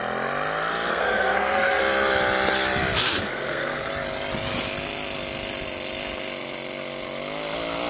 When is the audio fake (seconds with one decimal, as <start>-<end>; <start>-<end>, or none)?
0.9-1.8; 3.2-3.9